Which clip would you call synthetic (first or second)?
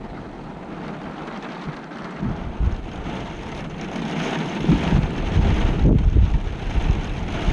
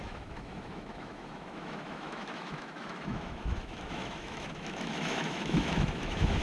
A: second